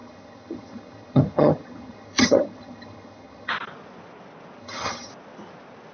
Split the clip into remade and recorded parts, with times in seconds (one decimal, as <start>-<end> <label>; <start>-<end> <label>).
0.0-3.5 remade; 3.5-4.6 recorded; 4.6-5.1 remade; 5.1-5.9 recorded